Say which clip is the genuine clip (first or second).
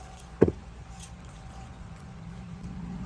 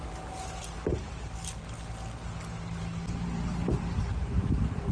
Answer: second